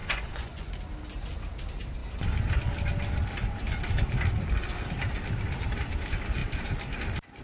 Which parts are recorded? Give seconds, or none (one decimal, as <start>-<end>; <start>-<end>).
0.7-7.4